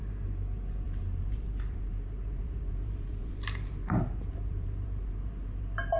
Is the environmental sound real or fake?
fake